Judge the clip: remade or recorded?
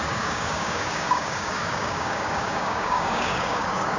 remade